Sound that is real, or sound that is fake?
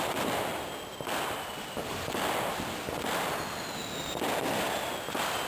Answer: real